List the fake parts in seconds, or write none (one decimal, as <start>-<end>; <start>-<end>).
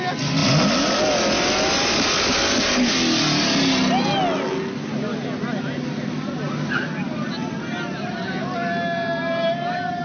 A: none